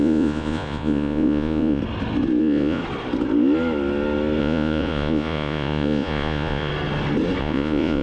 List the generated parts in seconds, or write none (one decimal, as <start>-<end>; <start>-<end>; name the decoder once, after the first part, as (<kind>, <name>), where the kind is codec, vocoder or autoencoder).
0.0-1.8 (vocoder, Vocos); 2.4-2.8; 4.4-6.7; 7.4-8.0